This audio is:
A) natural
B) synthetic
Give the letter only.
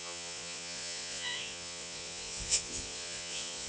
B